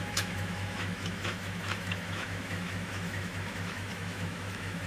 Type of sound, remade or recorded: remade